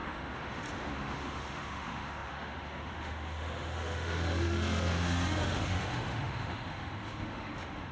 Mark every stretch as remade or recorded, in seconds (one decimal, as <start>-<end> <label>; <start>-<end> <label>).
0.0-7.9 remade